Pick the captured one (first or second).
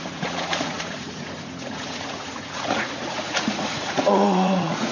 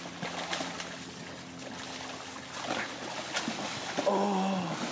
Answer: second